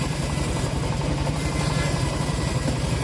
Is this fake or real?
fake